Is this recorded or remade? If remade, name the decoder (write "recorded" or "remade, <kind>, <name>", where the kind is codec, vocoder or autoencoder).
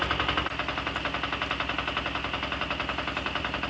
recorded